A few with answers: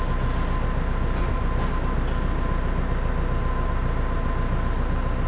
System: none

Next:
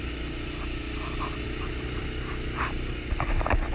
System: none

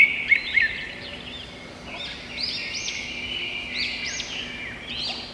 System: none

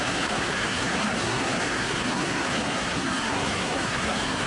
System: codec, SNAC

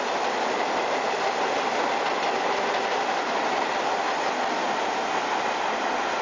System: none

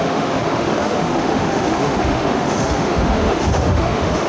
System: autoencoder, DAC-VAE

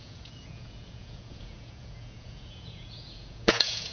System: vocoder, Vocos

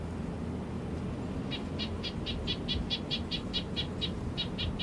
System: none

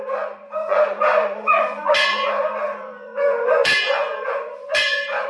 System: vocoder, Vocos